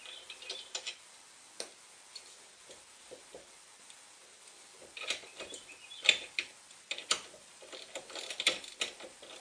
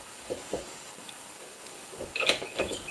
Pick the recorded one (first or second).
first